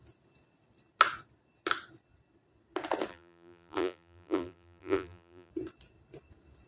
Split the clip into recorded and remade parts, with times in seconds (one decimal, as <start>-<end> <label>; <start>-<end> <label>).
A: 0.0-3.1 recorded; 3.1-5.5 remade; 5.5-6.7 recorded